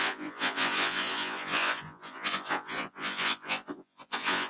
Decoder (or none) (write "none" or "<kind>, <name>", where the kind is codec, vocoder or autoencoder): vocoder, Vocos